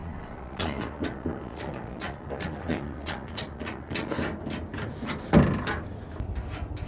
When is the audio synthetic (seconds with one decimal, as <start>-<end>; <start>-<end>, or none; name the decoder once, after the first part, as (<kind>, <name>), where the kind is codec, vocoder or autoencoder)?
0.0-4.1 (vocoder, Vocos)